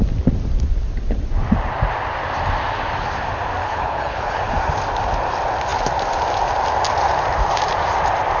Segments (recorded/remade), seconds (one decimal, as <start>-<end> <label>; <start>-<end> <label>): 0.0-3.6 recorded; 3.6-4.4 remade; 4.4-8.4 recorded